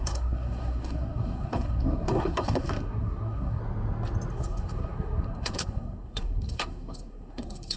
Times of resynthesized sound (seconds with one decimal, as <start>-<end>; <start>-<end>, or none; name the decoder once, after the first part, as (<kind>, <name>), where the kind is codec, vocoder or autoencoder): 0.0-3.6 (codec, SNAC); 4.3-7.8